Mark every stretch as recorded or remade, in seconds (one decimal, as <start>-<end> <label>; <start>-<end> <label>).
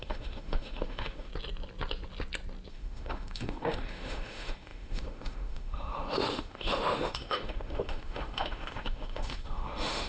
0.0-1.3 remade; 1.3-2.7 recorded; 2.7-10.1 remade